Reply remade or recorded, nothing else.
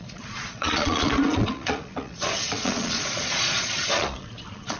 remade